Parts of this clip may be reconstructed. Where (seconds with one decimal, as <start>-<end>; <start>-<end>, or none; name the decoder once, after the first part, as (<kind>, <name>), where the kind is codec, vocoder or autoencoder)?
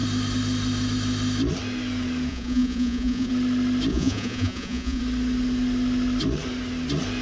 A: 2.3-3.3 (vocoder, Vocos); 3.9-5.0